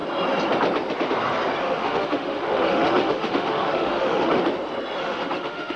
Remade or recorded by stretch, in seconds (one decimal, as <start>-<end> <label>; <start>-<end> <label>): 0.0-1.6 recorded; 1.6-4.4 remade; 4.4-5.0 recorded; 5.0-5.8 remade